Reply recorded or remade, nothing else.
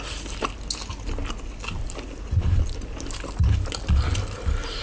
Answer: recorded